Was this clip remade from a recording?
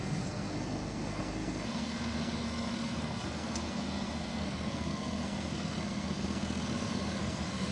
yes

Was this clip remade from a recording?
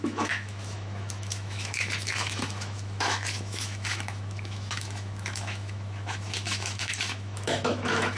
yes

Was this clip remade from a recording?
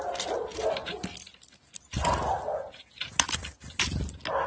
no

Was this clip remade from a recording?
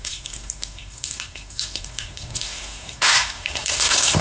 yes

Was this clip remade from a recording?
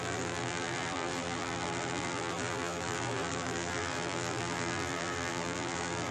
yes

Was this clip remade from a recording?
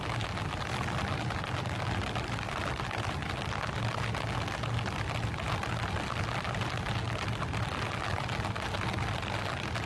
no